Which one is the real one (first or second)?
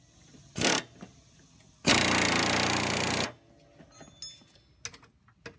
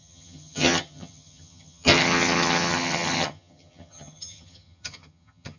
first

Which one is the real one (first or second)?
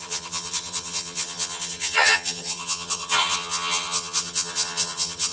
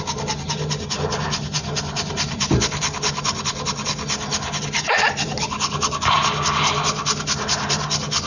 second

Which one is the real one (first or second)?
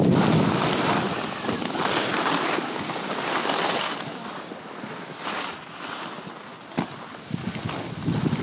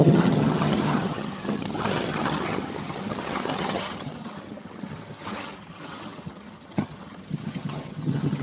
first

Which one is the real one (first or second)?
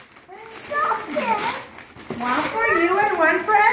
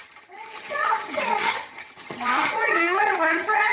first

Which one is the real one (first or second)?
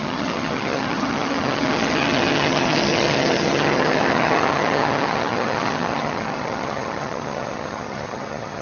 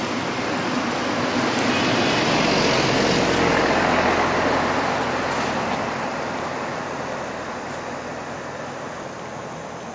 second